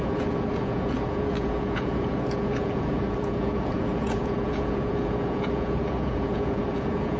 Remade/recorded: remade